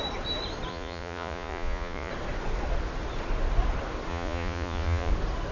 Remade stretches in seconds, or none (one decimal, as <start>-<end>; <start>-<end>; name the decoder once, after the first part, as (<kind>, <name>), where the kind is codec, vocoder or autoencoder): 0.7-2.1 (vocoder, Vocos); 4.1-5.1